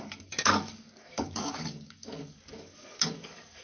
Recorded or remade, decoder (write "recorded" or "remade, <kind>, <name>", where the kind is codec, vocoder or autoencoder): remade, codec, DAC